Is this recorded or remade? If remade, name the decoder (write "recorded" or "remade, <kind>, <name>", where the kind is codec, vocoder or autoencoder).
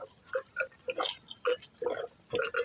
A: recorded